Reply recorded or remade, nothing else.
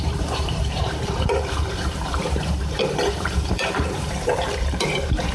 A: remade